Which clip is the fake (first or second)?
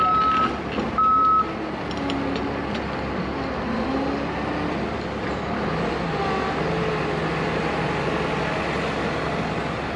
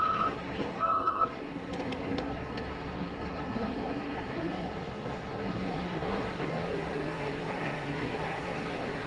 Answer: second